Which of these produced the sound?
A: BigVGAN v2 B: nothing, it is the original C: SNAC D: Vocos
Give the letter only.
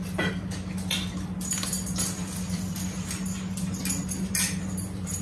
B